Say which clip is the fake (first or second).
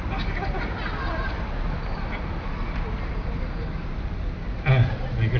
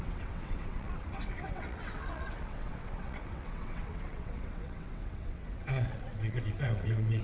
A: second